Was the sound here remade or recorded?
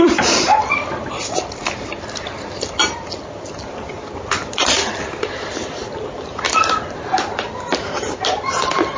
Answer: recorded